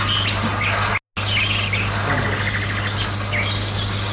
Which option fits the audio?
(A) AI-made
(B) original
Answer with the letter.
B